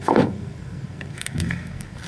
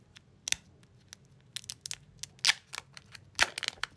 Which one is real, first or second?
second